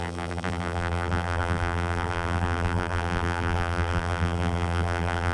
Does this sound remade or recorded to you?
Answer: remade